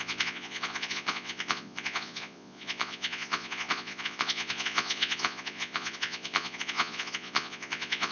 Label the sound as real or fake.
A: fake